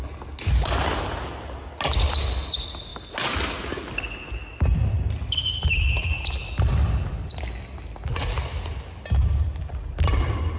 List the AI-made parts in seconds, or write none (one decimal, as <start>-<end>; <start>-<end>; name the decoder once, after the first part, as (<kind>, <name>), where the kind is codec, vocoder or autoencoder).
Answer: none